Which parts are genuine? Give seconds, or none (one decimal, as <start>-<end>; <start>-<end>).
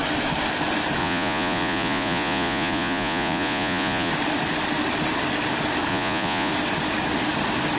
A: 0.0-1.0; 4.1-5.9; 6.5-7.8